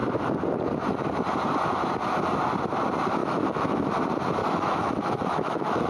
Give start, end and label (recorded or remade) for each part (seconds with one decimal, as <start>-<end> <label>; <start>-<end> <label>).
0.0-3.2 recorded; 3.2-3.9 remade; 3.9-4.4 recorded; 4.4-5.9 remade